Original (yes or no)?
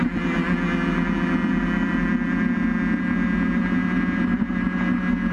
yes